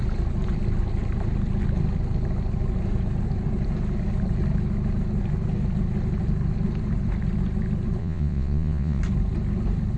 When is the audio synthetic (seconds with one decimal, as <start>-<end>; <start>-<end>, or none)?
8.0-9.0